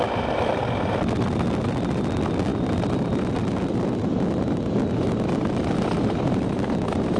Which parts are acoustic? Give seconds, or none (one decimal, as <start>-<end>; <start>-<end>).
0.0-7.2